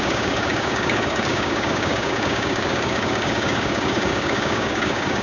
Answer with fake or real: fake